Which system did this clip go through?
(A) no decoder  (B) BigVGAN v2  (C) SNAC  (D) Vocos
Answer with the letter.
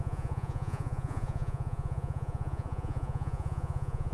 D